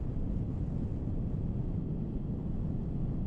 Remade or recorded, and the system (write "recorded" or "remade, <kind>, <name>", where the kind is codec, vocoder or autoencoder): recorded